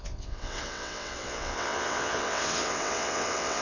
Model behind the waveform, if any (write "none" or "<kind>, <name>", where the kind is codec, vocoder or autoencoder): vocoder, WaveNeXt